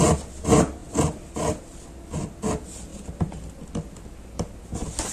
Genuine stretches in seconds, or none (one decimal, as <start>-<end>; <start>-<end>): 0.0-5.1